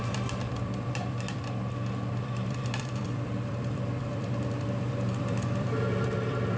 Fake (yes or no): yes